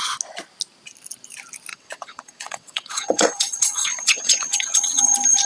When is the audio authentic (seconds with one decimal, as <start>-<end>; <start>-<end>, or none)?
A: 0.0-1.7; 5.0-5.5